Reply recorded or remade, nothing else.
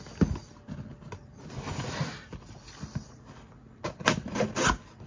recorded